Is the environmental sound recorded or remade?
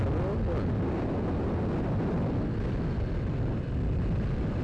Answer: recorded